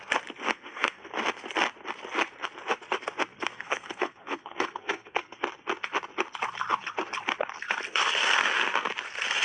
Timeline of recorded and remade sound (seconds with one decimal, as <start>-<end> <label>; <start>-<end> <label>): 0.0-0.5 recorded; 0.5-1.1 remade; 1.1-3.5 recorded; 3.5-5.4 remade; 5.4-9.4 recorded